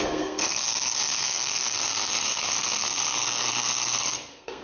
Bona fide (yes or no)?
no